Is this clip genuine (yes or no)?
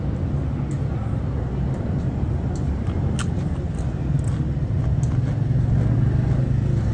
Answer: yes